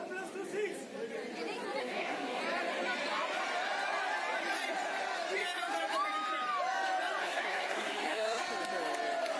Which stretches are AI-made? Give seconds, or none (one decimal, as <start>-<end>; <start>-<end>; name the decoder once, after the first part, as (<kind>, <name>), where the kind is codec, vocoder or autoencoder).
1.8-2.4 (codec, SNAC); 7.2-8.4